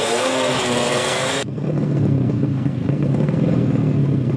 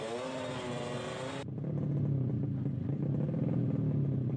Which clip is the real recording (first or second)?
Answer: second